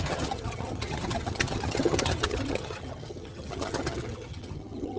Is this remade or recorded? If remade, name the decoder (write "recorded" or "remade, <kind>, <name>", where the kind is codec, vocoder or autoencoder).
remade, vocoder, HiFi-GAN